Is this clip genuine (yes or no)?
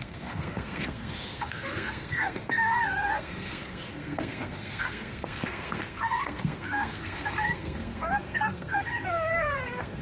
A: no